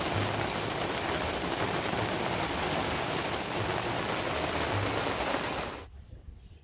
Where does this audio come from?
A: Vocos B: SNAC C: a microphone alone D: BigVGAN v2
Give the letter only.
C